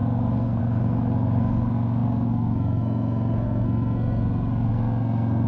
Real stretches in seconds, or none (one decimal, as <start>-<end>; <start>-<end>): none